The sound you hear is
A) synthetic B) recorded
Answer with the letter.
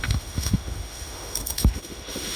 A